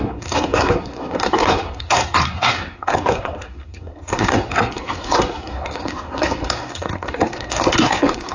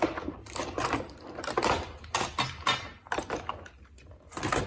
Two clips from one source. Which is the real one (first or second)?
second